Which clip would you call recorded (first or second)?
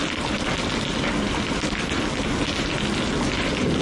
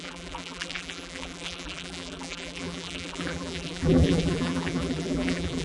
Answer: first